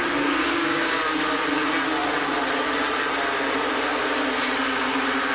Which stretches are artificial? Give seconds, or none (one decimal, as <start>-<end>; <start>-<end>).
0.0-0.9